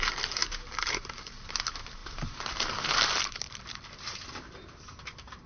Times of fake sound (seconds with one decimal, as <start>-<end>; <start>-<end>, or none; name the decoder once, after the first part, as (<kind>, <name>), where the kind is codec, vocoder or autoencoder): 0.4-1.3 (vocoder, BigVGAN v2); 2.0-5.5